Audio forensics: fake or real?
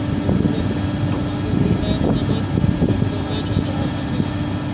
real